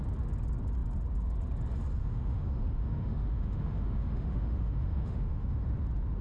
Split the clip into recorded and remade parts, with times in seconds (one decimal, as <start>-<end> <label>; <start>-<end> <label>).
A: 0.0-2.0 recorded; 2.0-5.7 remade; 5.7-6.2 recorded